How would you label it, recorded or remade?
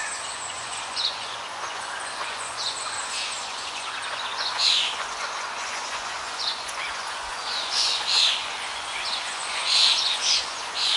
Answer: remade